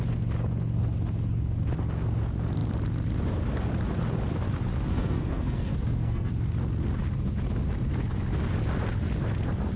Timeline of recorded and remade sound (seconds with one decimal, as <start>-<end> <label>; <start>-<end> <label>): 0.0-4.9 recorded; 4.9-6.3 remade; 6.3-9.8 recorded